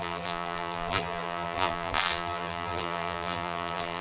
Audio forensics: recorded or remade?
remade